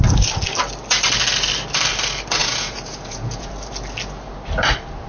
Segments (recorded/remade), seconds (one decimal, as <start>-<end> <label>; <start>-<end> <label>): 0.0-2.4 recorded; 2.4-3.5 remade; 3.5-5.1 recorded